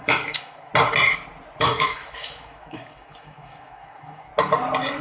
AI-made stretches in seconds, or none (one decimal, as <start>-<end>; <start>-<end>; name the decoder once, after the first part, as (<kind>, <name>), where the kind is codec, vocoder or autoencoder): 0.0-0.7 (autoencoder, DAC-VAE); 1.6-4.3